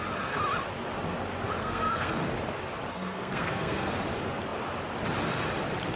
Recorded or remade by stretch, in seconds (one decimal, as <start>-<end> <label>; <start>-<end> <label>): 0.0-1.6 recorded; 1.6-2.1 remade; 2.1-2.9 recorded; 2.9-3.9 remade; 3.9-6.0 recorded